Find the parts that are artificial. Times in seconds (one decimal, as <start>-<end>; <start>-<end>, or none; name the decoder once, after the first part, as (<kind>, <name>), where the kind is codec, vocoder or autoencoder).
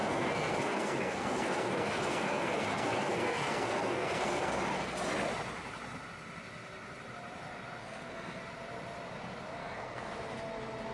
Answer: 0.0-4.6 (codec, SNAC); 7.8-8.4; 9.6-10.1